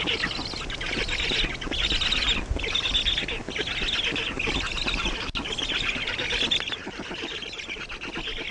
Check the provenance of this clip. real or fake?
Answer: real